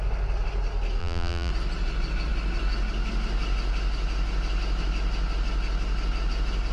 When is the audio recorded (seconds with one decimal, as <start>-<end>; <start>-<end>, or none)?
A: 0.0-1.0; 1.5-6.7